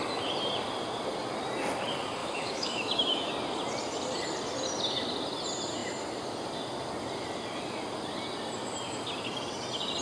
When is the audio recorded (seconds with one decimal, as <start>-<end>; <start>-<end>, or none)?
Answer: 0.0-2.2; 3.3-10.0